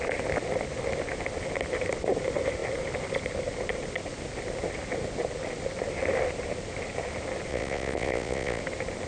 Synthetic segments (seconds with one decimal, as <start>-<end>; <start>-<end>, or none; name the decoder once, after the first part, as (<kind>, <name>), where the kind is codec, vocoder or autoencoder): 7.5-8.6 (vocoder, Vocos)